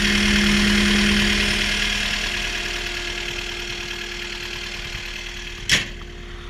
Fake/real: real